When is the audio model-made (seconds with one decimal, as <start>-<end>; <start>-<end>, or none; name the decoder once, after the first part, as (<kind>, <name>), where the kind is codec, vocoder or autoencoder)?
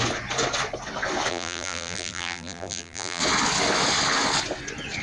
1.3-3.2 (vocoder, BigVGAN v2)